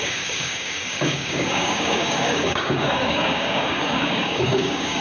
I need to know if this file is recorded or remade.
remade